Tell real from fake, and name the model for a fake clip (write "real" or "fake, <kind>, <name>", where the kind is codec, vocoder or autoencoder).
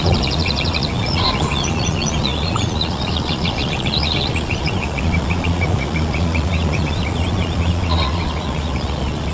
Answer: fake, vocoder, Vocos